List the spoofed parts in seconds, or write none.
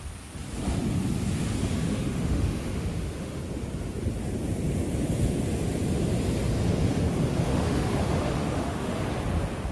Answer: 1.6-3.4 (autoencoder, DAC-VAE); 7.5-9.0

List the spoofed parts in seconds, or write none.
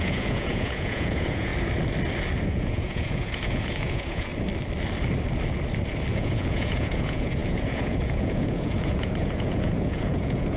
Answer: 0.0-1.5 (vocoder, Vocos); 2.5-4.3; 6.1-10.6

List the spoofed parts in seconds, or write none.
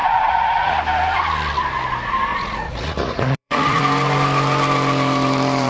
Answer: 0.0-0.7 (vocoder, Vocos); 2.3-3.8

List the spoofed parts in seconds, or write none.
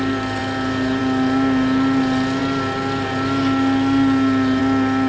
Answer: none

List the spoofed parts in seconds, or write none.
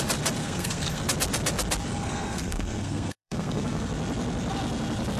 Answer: 0.4-1.0 (codec, SNAC); 1.9-3.9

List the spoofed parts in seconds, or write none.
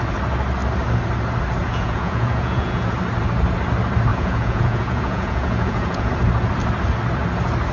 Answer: 1.6-2.9 (vocoder, Vocos); 4.1-6.1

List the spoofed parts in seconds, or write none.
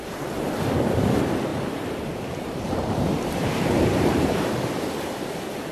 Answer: 1.5-4.9 (vocoder, BigVGAN v2)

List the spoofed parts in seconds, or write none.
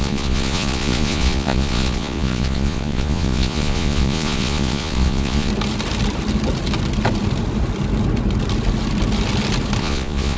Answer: 0.0-5.5 (vocoder, Vocos); 9.8-10.4